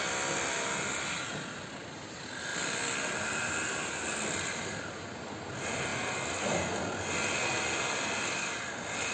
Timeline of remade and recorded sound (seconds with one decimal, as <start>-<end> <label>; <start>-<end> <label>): 0.0-9.1 recorded